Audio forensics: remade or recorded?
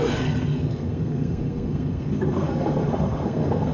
remade